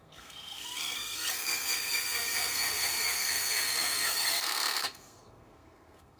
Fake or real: fake